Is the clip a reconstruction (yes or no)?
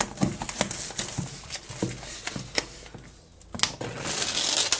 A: no